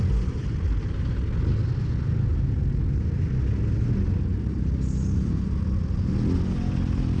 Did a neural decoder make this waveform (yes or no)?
no